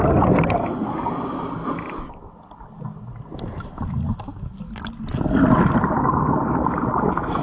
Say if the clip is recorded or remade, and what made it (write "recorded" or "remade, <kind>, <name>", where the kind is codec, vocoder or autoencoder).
recorded